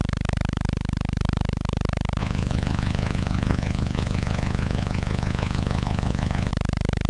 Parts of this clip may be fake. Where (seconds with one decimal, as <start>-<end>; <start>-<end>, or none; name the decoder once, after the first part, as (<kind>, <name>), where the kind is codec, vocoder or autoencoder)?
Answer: 2.2-6.5 (vocoder, Vocos)